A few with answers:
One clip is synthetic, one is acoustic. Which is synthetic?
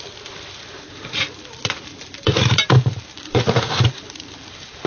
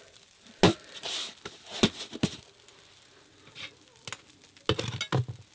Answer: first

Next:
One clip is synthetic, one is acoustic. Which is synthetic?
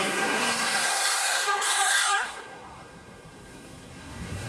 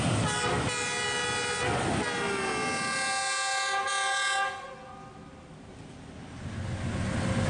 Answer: first